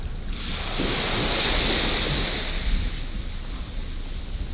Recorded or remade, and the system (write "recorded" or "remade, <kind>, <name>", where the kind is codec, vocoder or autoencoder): recorded